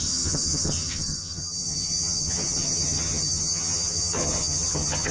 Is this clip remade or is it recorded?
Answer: remade